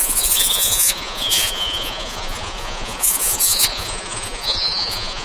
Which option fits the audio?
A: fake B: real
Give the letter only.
A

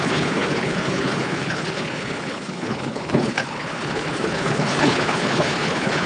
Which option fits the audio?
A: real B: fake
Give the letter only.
B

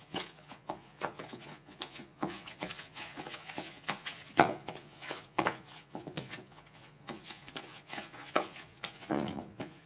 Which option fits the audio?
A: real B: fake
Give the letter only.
B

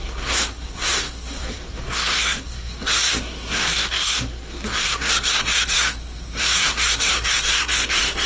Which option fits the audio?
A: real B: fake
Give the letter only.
B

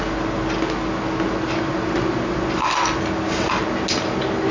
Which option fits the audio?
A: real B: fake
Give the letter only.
A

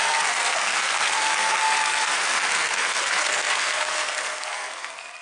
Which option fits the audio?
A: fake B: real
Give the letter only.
A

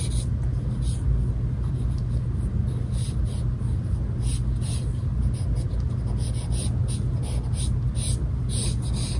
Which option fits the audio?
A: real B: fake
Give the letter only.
A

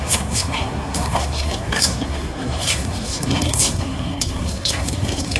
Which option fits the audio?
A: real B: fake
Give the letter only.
B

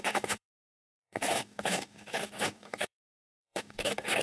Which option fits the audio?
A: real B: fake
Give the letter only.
B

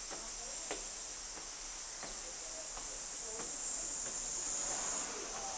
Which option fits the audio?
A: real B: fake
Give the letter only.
A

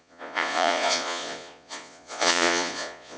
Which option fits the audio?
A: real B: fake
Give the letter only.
B